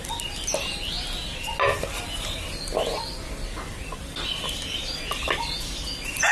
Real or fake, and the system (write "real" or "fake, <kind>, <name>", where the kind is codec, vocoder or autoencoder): real